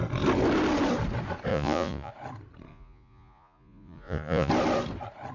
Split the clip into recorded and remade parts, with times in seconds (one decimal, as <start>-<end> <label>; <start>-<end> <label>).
0.0-1.5 recorded; 1.5-2.1 remade; 2.1-2.7 recorded; 2.7-4.5 remade; 4.5-5.3 recorded